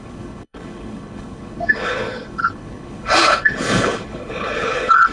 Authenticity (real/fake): fake